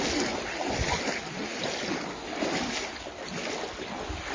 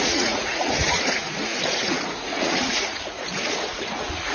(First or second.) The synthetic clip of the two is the second